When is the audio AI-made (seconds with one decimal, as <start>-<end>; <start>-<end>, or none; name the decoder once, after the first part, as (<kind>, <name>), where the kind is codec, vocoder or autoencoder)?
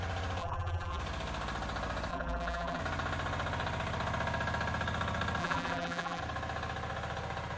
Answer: 0.4-1.0 (vocoder, BigVGAN v2); 2.1-2.8; 5.4-6.2